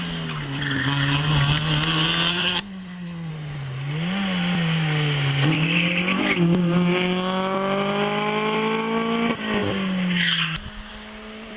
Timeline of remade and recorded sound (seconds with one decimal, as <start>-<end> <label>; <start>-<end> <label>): 0.0-2.3 recorded; 2.3-3.3 remade; 3.3-11.6 recorded